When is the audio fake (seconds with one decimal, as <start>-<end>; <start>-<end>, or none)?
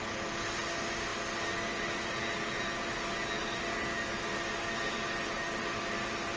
none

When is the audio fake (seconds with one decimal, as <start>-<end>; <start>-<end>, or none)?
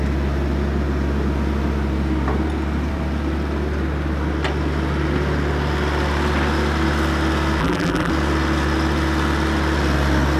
7.6-8.1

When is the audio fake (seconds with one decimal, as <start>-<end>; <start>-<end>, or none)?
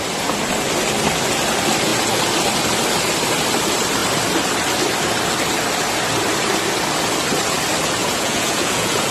8.0-9.1